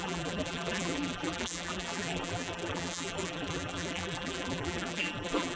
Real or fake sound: fake